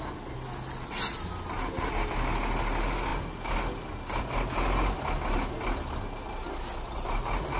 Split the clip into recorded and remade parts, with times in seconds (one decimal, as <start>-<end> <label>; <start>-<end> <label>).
0.0-7.6 recorded

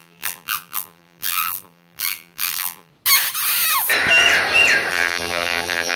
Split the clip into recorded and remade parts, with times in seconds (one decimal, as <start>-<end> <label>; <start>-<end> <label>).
0.0-2.9 remade; 2.9-4.9 recorded; 4.9-6.0 remade

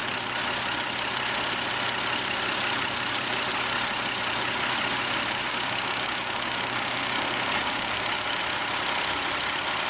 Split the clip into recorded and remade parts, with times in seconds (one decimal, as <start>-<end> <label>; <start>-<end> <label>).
0.0-5.5 recorded; 5.5-8.4 remade; 8.4-9.9 recorded

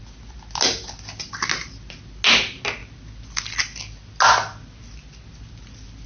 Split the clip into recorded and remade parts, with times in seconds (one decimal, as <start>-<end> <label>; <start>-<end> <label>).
0.0-6.1 recorded

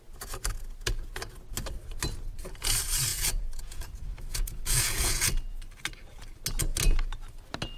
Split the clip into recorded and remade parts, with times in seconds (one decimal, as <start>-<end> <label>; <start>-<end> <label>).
0.0-3.1 recorded; 3.1-3.8 remade; 3.8-4.3 recorded; 4.3-5.3 remade; 5.3-7.8 recorded

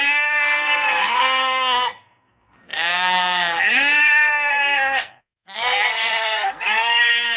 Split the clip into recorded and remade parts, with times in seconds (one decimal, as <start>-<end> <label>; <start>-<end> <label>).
0.0-7.4 remade

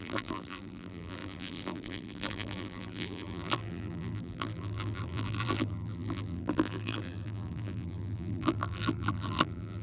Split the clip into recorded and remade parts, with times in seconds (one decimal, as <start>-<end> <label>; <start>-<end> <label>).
0.0-9.8 remade

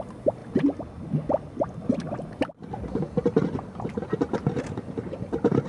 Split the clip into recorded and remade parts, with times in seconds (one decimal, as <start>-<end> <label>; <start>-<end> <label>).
0.0-5.7 recorded